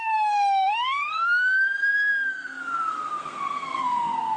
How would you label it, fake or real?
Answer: fake